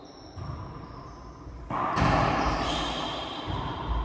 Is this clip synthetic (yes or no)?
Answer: yes